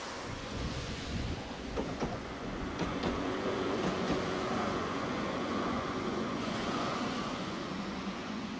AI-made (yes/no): yes